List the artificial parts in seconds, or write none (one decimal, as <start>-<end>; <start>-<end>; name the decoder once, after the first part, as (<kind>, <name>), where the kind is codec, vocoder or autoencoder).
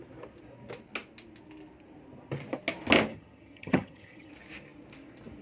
3.1-4.3 (vocoder, HiFi-GAN)